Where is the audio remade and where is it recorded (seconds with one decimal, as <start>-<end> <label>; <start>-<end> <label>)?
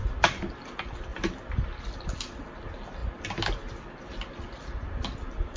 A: 0.0-5.6 recorded